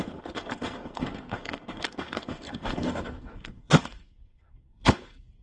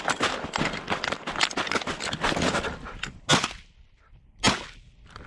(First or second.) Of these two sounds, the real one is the second